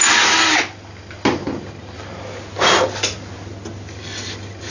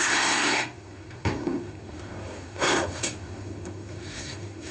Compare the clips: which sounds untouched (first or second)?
first